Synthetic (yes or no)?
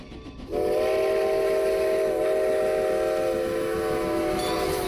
no